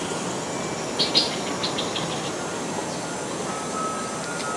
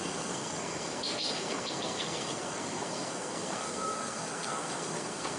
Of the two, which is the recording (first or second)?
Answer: first